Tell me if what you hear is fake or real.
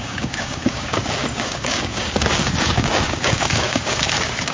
fake